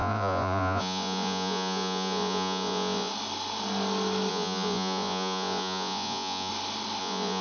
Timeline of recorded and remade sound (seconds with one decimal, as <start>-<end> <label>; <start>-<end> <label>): 0.0-3.1 remade; 3.1-4.3 recorded; 4.3-6.5 remade; 6.5-7.0 recorded; 7.0-7.4 remade